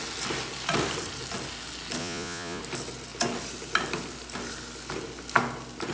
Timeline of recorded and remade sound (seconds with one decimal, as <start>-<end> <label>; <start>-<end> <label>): 0.0-2.0 recorded; 2.0-2.6 remade; 2.6-5.9 recorded